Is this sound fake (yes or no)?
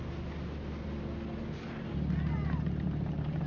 no